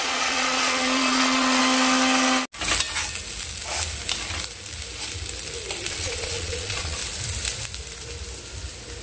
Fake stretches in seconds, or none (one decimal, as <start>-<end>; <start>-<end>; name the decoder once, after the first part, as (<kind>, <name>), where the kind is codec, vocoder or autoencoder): 0.0-1.6 (vocoder, Vocos); 5.9-7.0